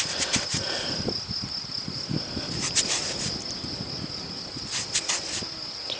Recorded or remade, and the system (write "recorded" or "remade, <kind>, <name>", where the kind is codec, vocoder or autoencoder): recorded